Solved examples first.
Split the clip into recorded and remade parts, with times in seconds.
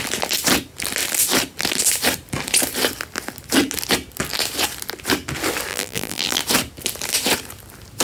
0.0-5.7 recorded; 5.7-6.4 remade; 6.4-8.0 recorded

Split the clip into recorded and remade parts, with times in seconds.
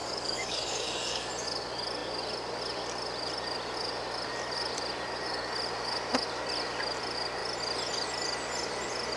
0.0-1.3 remade; 1.3-9.2 recorded